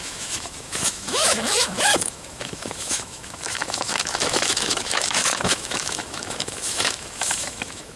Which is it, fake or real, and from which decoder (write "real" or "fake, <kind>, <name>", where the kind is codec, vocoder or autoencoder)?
fake, autoencoder, DAC-VAE